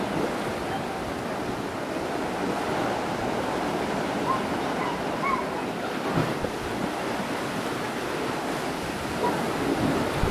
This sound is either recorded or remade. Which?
recorded